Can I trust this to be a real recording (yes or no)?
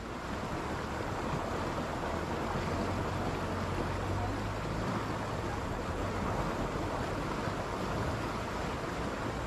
yes